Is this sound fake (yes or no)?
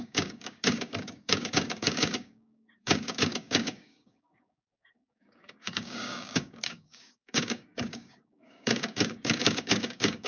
yes